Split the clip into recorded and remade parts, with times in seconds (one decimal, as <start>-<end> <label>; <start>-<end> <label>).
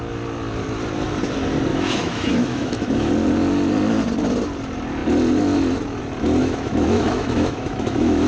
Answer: 0.0-1.7 recorded; 1.7-3.1 remade; 3.1-6.4 recorded; 6.4-8.3 remade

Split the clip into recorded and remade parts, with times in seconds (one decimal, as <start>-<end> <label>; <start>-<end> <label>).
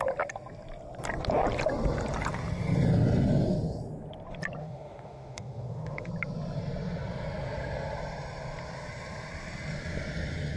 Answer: 0.0-4.6 recorded; 4.6-6.1 remade; 6.1-10.6 recorded